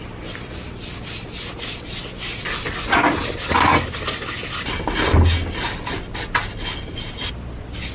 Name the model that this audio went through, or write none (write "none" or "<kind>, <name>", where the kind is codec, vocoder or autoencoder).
none